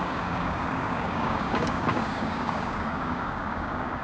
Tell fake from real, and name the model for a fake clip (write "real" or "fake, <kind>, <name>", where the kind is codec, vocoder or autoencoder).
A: fake, codec, DAC